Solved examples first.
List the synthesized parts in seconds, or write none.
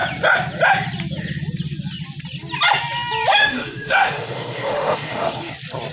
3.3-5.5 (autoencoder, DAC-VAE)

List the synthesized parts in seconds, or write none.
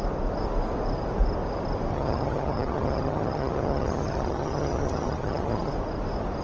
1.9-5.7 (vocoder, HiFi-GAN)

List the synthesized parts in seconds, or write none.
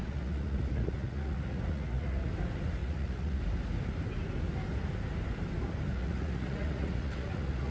0.0-2.3 (vocoder, Vocos); 2.8-3.4; 5.9-7.7